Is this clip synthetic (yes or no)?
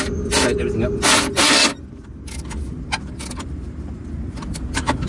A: no